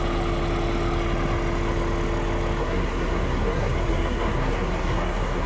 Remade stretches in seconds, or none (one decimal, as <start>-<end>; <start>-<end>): 2.6-5.5